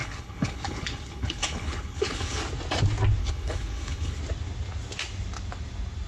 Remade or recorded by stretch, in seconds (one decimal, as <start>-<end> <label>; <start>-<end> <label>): 0.0-2.4 remade; 2.4-3.2 recorded; 3.2-4.2 remade; 4.2-6.1 recorded